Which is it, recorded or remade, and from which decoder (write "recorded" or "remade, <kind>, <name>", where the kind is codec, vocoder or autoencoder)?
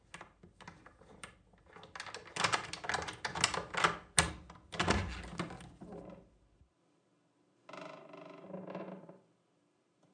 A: recorded